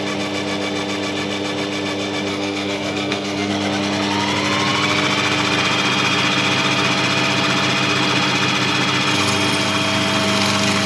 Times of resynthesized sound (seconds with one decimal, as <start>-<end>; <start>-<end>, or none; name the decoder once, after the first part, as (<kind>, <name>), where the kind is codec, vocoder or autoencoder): 2.3-3.5 (codec, SNAC)